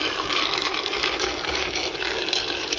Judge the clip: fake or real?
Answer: fake